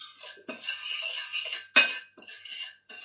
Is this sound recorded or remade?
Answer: recorded